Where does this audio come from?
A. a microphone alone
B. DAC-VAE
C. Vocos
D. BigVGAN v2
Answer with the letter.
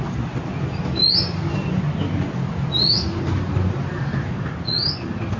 A